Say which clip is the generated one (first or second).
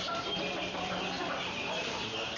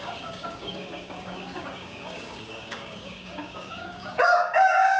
second